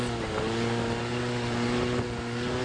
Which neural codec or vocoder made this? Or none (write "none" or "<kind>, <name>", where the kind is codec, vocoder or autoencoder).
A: none